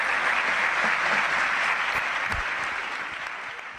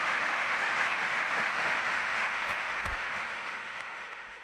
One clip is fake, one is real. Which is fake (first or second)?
second